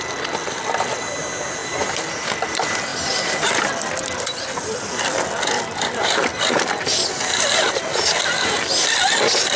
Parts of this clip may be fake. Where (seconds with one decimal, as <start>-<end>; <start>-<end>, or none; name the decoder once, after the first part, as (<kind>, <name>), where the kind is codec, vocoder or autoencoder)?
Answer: none